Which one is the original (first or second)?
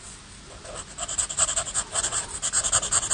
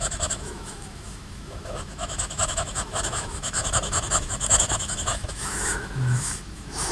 first